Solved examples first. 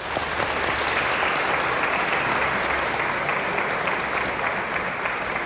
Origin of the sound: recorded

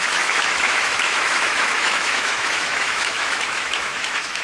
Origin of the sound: remade